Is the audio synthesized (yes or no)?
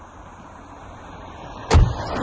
yes